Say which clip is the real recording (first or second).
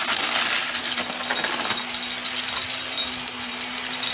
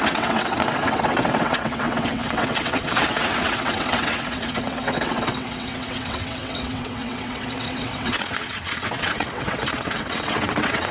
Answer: first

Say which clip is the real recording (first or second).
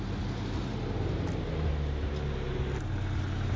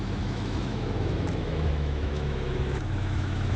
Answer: first